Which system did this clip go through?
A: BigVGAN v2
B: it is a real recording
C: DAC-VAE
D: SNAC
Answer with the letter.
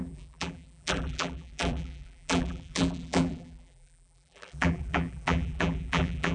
A